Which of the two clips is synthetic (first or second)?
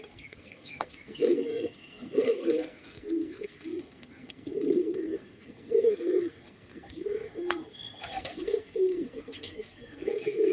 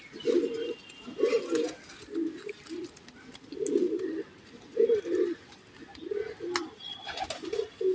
first